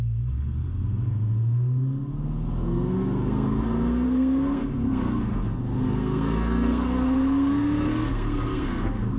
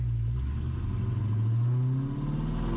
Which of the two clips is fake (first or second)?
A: first